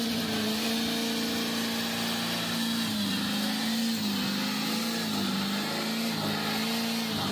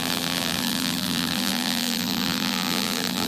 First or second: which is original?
first